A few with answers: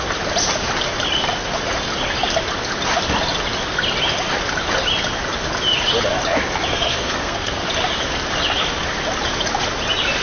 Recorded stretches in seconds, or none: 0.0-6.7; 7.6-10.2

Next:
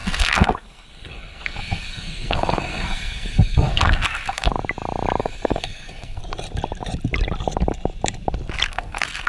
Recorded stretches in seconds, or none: 4.5-5.2; 6.2-8.7

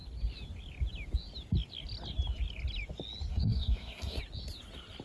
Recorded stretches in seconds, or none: 0.0-3.3; 4.2-5.0

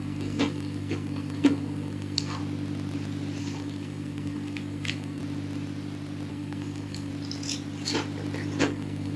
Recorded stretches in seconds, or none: 2.4-3.4; 5.2-6.3; 7.1-8.6

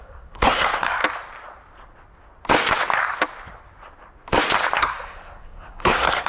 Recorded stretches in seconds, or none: 1.0-4.8